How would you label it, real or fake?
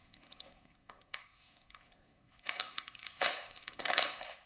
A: fake